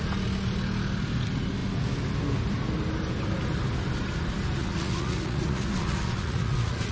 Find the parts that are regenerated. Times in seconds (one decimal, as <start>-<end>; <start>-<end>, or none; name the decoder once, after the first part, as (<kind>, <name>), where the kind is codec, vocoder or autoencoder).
4.6-6.9 (vocoder, Vocos)